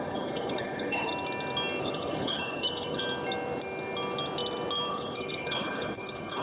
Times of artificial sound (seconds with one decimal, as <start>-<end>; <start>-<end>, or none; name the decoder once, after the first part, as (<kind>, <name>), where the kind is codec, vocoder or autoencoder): 0.0-1.1 (codec, HILCodec); 1.8-3.0; 4.9-6.4